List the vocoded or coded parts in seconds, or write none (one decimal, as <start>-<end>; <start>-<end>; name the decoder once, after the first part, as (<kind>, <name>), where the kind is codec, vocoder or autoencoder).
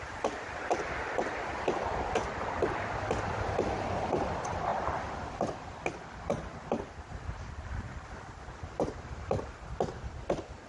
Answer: 4.7-9.5 (vocoder, BigVGAN v2)